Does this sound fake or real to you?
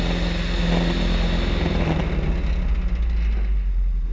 real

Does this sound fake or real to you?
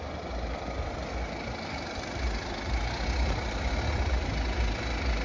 real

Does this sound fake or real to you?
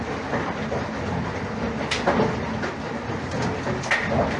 real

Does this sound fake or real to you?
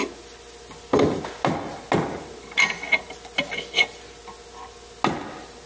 real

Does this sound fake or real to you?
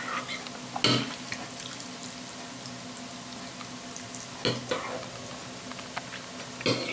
real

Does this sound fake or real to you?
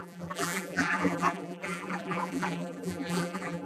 fake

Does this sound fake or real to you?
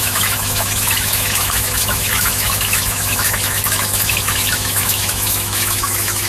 fake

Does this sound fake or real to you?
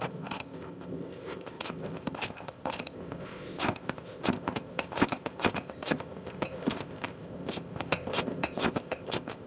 fake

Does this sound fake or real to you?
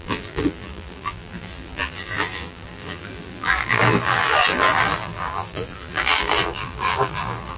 fake